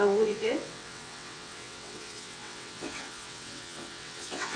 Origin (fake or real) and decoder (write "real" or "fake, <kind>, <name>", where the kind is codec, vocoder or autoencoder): fake, vocoder, WaveNeXt